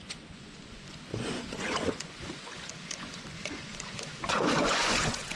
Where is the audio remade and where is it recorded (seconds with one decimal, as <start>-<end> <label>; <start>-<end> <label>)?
0.0-5.4 remade